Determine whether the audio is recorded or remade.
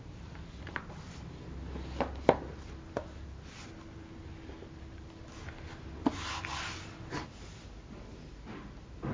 recorded